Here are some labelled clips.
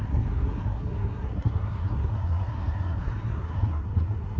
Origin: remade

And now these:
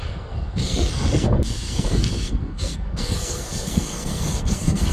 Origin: remade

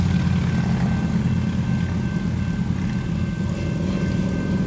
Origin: recorded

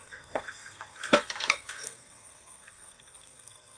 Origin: remade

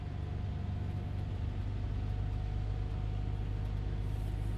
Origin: recorded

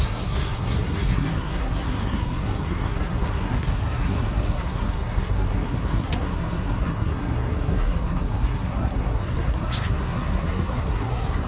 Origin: remade